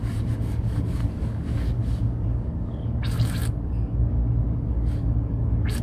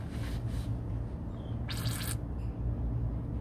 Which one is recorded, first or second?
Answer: second